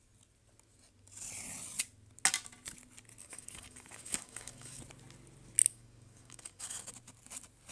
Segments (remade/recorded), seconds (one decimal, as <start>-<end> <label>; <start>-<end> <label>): 0.0-3.2 recorded; 3.2-4.8 remade; 4.8-5.7 recorded; 5.7-6.9 remade; 6.9-7.7 recorded

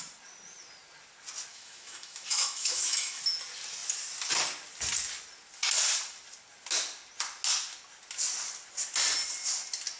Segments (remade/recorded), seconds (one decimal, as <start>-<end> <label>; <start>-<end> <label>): 0.0-1.5 recorded; 1.5-3.2 remade; 3.2-10.0 recorded